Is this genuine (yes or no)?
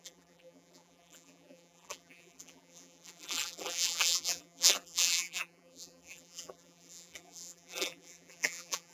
no